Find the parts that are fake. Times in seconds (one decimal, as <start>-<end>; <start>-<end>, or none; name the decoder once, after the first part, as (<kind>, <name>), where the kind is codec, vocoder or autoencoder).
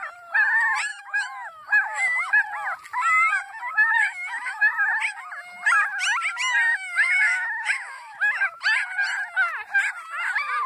0.9-2.3 (autoencoder, DAC-VAE); 3.7-4.7; 6.7-8.6